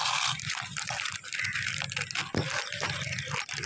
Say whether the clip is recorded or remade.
recorded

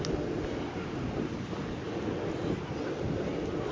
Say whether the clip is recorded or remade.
recorded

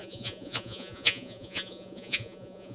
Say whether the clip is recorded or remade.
remade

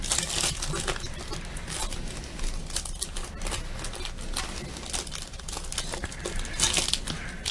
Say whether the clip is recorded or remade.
recorded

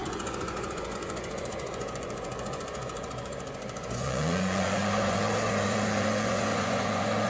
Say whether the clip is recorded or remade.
remade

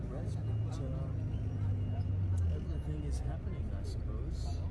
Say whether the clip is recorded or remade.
recorded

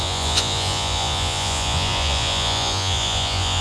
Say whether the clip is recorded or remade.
remade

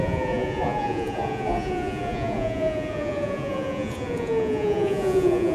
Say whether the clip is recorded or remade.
remade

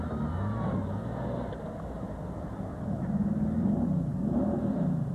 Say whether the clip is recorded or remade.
recorded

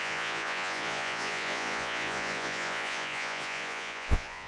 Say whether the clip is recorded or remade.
remade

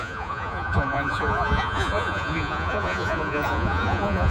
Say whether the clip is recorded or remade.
remade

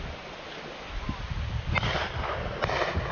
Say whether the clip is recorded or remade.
recorded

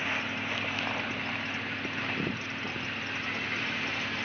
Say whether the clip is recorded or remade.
recorded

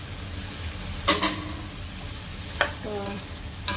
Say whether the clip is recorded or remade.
recorded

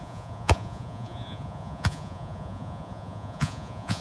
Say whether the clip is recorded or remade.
remade